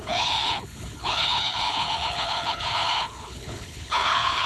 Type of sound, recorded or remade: remade